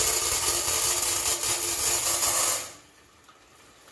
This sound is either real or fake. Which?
real